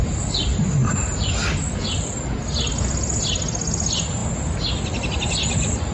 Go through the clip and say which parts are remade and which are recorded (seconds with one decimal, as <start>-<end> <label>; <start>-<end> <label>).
0.0-5.9 recorded